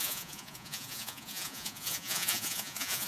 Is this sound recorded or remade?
remade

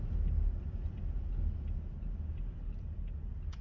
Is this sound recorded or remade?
recorded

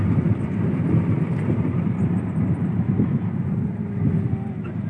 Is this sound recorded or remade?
remade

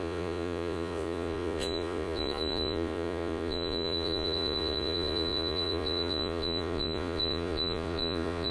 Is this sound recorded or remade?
remade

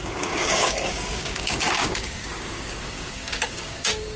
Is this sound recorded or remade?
remade